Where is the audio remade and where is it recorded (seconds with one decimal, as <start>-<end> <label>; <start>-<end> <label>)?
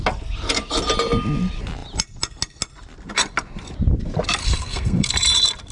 0.0-4.4 recorded; 4.4-5.1 remade; 5.1-5.7 recorded